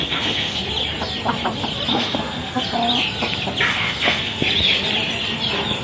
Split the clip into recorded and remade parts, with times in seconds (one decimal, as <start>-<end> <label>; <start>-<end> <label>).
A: 0.0-0.6 remade; 0.6-1.9 recorded; 1.9-2.6 remade; 2.6-3.7 recorded; 3.7-4.4 remade; 4.4-5.8 recorded